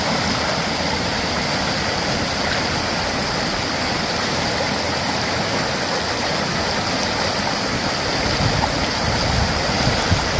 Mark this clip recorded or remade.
recorded